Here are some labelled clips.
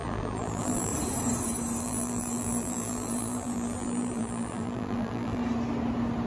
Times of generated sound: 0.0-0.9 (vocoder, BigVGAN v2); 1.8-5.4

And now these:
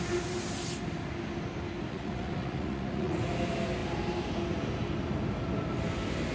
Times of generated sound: 1.9-3.2 (vocoder, Vocos)